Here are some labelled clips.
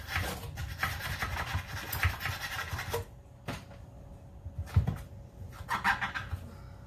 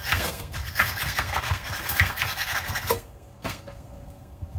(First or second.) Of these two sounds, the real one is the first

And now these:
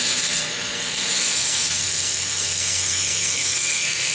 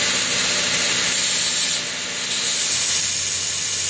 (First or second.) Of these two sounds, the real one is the second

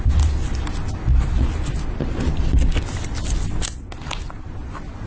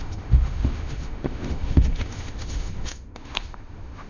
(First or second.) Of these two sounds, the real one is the first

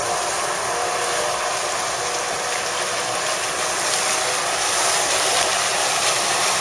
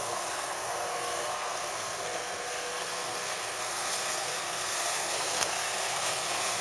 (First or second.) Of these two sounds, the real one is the first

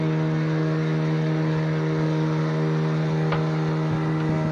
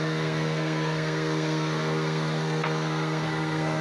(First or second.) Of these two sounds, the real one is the first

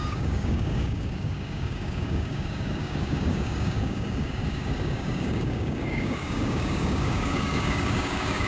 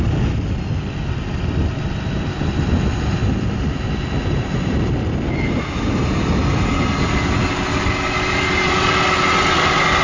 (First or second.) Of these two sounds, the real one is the second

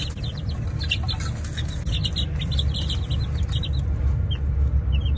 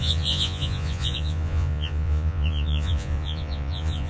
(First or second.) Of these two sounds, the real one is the first